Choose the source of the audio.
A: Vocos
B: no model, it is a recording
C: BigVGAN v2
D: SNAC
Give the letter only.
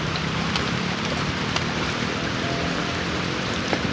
B